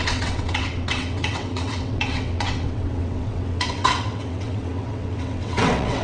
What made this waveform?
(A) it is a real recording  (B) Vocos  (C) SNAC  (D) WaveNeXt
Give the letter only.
D